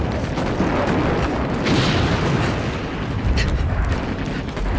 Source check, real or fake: real